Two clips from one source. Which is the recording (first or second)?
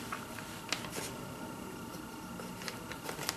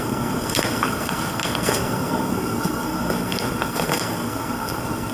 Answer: first